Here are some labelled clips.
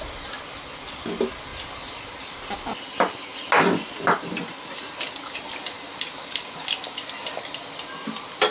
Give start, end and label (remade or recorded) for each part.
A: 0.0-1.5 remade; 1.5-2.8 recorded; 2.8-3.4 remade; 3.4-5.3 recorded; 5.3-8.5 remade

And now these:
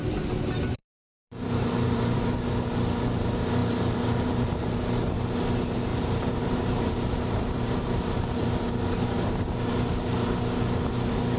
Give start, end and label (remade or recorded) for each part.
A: 0.0-0.8 recorded; 0.8-2.2 remade; 2.2-3.6 recorded; 3.6-4.7 remade; 4.7-5.9 recorded; 5.9-8.7 remade; 8.7-11.4 recorded

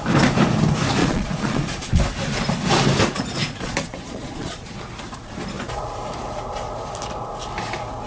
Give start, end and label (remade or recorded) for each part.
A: 0.0-1.0 recorded; 1.0-2.0 remade; 2.0-3.4 recorded; 3.4-4.8 remade; 4.8-8.1 recorded